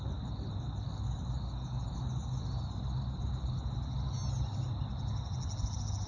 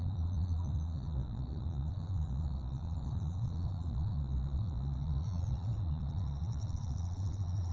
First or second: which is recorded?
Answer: first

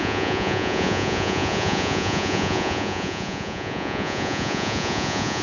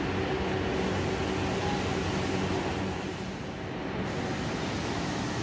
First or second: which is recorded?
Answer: second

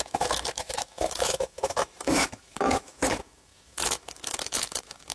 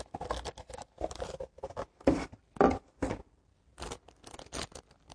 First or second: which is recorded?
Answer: second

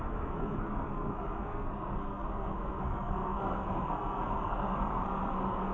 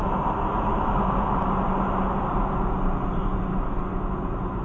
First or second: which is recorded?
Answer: second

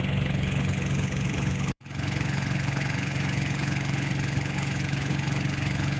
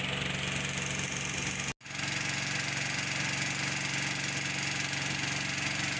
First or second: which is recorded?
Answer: second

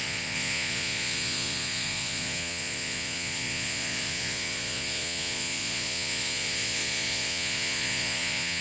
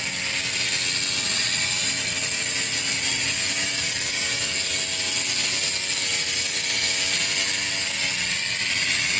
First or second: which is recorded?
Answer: second